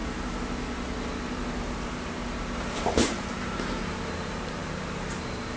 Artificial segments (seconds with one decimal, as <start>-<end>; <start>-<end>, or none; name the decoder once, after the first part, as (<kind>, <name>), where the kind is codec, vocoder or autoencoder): 1.6-2.2 (vocoder, BigVGAN v2); 2.9-5.6